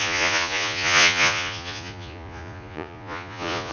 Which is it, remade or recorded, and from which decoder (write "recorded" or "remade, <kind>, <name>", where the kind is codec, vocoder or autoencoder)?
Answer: remade, vocoder, Vocos